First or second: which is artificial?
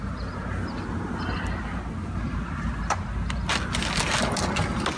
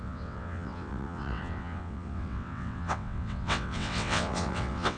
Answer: second